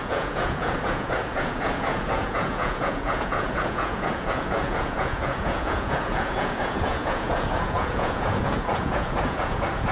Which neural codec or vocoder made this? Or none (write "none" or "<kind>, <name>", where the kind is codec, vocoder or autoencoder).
vocoder, Vocos